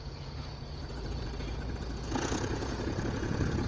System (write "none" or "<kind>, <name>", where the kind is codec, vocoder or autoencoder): vocoder, Vocos